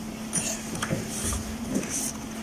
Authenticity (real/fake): real